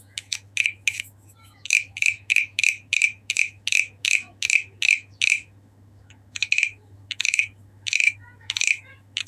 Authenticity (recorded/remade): remade